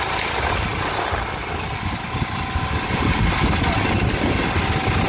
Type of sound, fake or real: real